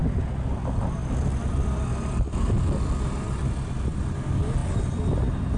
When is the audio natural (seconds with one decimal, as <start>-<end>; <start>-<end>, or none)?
0.0-5.6